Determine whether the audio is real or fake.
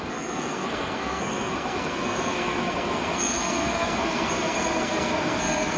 fake